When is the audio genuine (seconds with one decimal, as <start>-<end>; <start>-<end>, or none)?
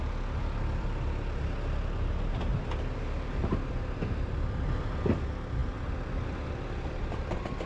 0.0-7.7